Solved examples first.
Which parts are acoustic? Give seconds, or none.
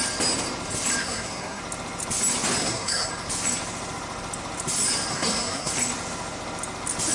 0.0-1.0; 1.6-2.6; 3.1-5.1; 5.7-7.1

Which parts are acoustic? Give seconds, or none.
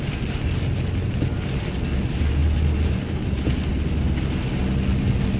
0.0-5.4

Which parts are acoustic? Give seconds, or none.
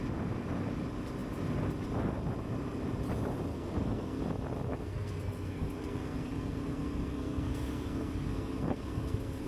0.0-3.5; 4.2-4.7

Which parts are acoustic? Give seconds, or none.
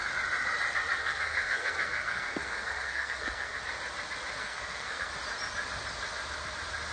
0.0-1.0; 3.6-4.4; 5.1-6.9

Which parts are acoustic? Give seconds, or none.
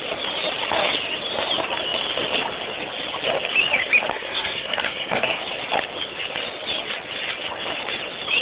0.0-4.1; 5.4-8.4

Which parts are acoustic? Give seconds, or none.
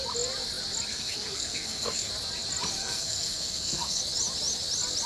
0.0-0.9; 2.1-2.8; 4.0-5.1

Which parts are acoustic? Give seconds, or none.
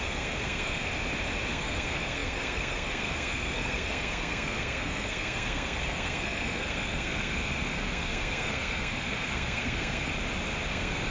0.9-1.5; 10.1-10.7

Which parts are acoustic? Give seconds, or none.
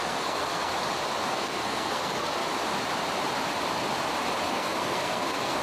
0.7-1.3; 2.4-4.5